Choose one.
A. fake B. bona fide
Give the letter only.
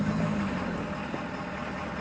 B